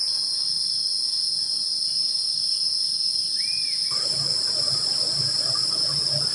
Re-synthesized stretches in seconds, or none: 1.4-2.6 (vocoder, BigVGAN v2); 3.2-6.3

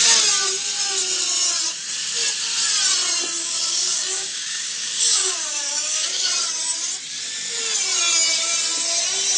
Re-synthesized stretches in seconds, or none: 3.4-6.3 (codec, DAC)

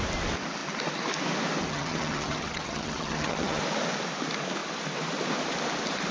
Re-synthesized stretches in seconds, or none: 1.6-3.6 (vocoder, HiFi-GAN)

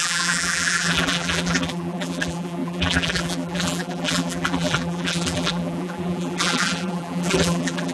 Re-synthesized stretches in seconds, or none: 0.0-7.9 (vocoder, BigVGAN v2)

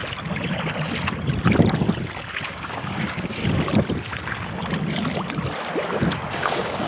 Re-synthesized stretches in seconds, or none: 2.5-3.4 (codec, DAC); 6.3-6.9